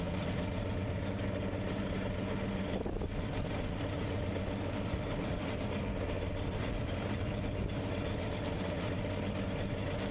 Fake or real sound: real